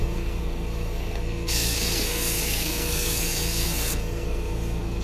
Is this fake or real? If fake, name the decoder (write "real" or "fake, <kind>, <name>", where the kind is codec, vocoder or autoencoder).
fake, codec, SNAC